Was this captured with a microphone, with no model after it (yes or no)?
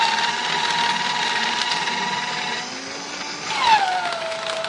yes